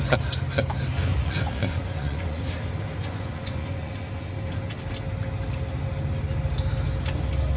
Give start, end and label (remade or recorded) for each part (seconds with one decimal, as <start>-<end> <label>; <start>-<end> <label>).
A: 0.0-1.1 recorded; 1.1-2.4 remade; 2.4-3.0 recorded; 3.0-3.9 remade; 3.9-7.6 recorded